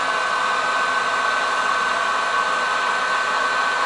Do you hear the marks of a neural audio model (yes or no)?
no